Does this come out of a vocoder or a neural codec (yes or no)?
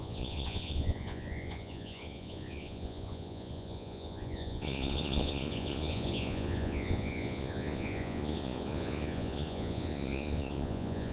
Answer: yes